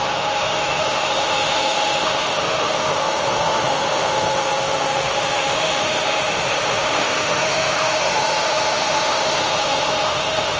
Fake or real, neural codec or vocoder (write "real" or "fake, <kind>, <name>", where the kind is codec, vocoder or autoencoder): fake, autoencoder, DAC-VAE